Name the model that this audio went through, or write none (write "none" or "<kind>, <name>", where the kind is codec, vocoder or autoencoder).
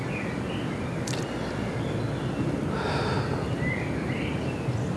none